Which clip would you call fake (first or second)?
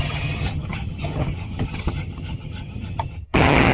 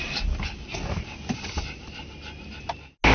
first